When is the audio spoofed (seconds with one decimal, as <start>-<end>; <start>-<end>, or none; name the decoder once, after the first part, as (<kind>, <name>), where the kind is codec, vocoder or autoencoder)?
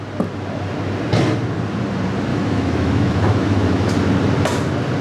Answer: 2.3-3.9 (autoencoder, DAC-VAE)